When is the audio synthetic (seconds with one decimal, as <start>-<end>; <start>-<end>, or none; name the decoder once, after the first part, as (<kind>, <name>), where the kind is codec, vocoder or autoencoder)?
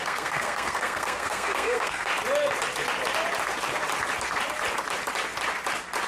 0.0-2.1 (codec, SNAC)